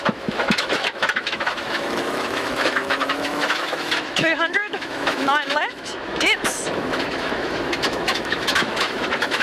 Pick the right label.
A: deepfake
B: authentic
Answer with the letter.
A